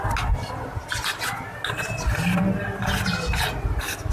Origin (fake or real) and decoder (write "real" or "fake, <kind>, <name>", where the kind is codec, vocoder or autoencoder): real